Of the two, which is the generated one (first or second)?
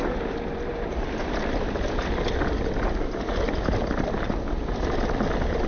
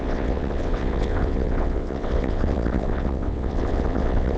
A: second